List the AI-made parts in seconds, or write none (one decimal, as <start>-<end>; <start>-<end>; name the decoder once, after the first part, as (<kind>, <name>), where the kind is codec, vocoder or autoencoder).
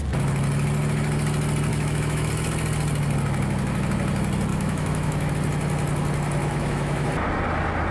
1.7-2.3 (autoencoder, DAC-VAE); 4.5-5.3; 6.4-7.1